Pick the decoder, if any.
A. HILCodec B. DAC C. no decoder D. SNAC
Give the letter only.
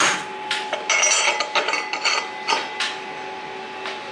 C